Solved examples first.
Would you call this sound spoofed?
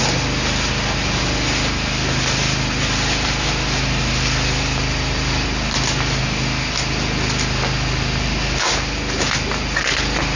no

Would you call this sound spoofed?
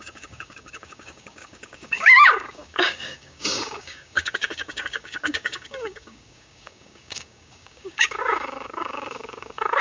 yes